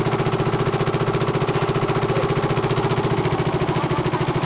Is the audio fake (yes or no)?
no